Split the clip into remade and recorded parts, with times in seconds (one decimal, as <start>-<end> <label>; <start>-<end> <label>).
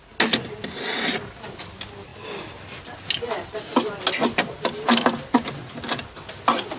0.0-6.8 recorded